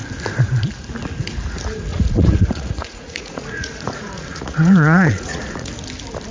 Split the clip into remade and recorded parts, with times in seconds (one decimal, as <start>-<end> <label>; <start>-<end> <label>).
0.0-1.9 recorded; 1.9-5.7 remade; 5.7-6.3 recorded